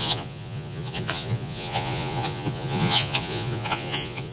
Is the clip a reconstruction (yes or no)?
yes